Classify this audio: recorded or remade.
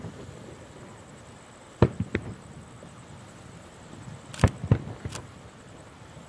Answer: recorded